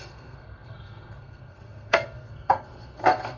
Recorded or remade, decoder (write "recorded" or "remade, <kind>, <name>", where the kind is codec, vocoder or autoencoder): remade, codec, SNAC